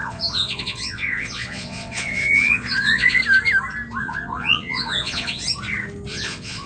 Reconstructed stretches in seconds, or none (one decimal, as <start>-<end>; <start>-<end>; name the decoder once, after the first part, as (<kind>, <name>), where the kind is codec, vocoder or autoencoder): 0.0-3.2 (vocoder, Vocos); 4.0-5.4; 6.1-6.7

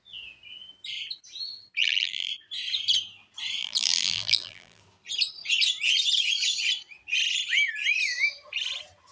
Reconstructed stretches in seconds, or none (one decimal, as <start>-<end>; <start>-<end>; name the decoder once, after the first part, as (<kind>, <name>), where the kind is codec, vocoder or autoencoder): 1.8-2.3 (vocoder, BigVGAN v2); 3.6-4.8

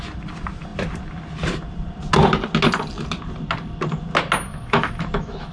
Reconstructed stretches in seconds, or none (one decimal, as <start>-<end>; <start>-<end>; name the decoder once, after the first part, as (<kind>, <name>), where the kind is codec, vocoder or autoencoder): 4.5-5.5 (autoencoder, DAC-VAE)

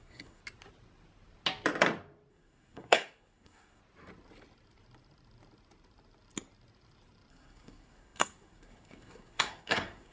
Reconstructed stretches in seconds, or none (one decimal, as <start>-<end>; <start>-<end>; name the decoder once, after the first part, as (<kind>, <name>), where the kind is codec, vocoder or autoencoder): 0.0-0.4 (codec, SNAC); 2.3-3.8; 7.3-10.1

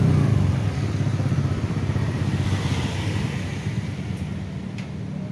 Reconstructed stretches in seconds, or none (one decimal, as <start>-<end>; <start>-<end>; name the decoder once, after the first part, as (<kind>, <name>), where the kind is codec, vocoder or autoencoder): 1.1-4.3 (vocoder, BigVGAN v2)

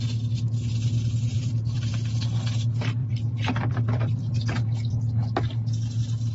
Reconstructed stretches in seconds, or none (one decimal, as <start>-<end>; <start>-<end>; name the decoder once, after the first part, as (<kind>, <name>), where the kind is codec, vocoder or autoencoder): 1.3-1.9 (vocoder, BigVGAN v2); 3.0-5.0

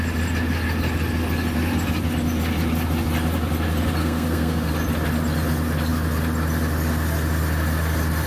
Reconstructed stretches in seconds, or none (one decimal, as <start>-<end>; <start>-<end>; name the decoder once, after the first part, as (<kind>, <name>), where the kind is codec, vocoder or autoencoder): 4.0-4.7 (codec, SNAC)

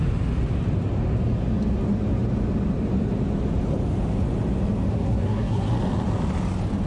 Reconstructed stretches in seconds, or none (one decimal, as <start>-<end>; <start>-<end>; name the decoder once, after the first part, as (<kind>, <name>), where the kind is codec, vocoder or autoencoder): 4.9-5.7 (codec, SNAC)